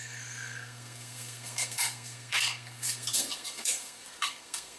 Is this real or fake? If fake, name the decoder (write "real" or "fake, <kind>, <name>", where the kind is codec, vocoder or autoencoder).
fake, codec, SNAC